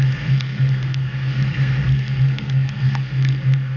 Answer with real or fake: fake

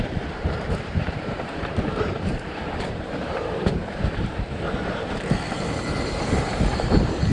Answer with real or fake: fake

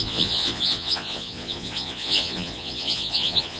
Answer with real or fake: fake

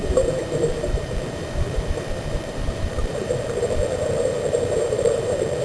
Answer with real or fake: fake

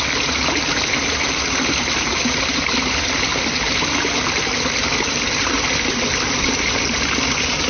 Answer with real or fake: real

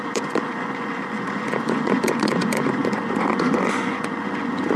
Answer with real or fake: fake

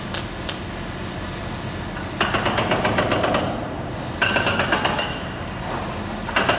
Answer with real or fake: real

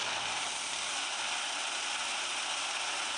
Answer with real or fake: real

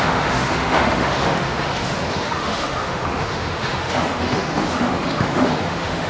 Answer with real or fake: fake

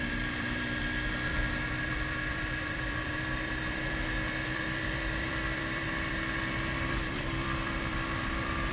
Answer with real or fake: fake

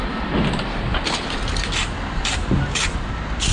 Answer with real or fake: real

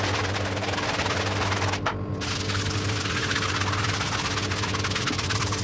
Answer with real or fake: real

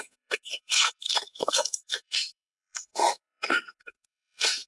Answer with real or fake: fake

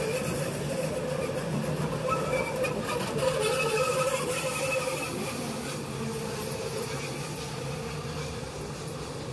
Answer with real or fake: real